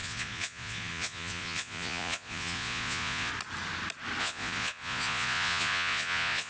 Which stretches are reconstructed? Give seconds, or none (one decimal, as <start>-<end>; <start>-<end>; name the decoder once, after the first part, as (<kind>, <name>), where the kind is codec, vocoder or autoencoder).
0.0-3.3 (vocoder, Vocos); 4.2-6.5